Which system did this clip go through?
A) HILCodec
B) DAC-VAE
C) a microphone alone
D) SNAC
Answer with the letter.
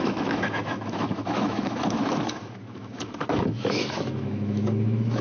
B